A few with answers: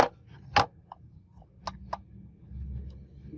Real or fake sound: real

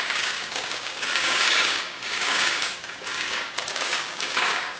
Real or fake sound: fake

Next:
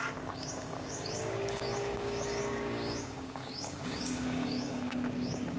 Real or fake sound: fake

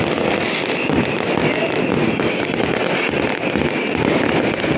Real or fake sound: real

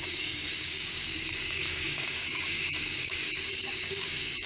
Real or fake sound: fake